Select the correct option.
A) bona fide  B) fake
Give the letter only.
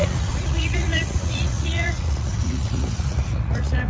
B